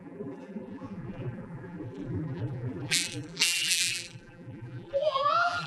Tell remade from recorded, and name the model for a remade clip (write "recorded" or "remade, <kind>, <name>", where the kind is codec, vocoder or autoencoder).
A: remade, vocoder, BigVGAN v2